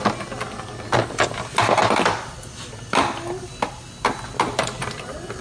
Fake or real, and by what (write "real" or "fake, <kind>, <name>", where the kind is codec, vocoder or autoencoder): real